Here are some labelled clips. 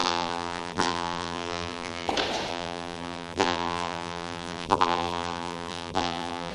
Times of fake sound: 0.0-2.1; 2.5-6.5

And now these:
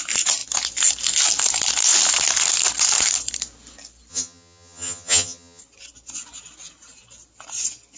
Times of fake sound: 4.1-5.6

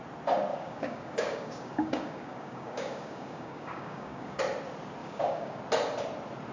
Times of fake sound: 0.5-4.4; 5.0-5.6

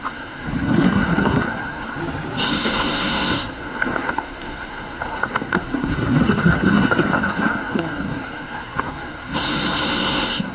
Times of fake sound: 0.0-2.0; 2.5-10.5